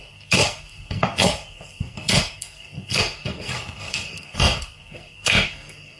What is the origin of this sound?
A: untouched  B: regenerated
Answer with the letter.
B